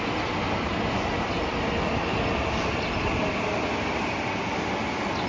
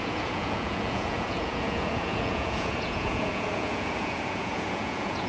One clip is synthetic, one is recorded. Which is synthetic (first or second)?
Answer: second